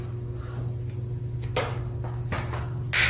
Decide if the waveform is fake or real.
real